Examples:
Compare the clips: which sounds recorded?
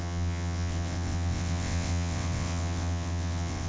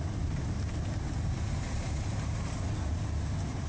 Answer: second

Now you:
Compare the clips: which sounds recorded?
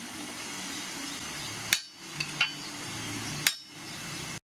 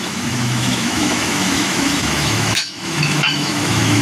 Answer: first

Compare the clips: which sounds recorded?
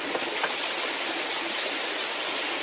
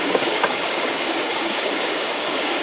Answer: first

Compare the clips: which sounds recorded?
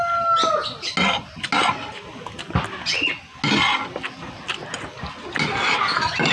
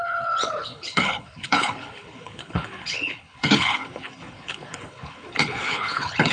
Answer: first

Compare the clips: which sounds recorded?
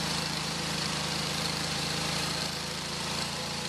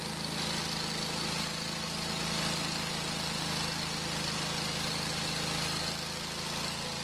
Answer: second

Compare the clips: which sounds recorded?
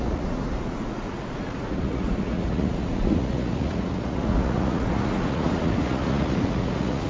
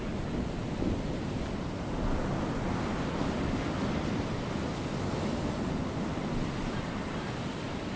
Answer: second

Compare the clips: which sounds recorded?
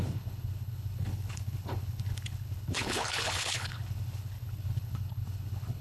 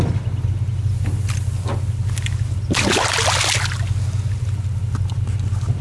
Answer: second